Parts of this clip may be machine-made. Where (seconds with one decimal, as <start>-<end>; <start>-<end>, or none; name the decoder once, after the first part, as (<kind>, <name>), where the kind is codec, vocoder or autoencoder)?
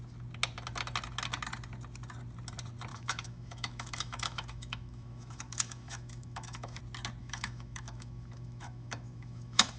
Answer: 2.9-6.8 (autoencoder, DAC-VAE); 7.2-9.8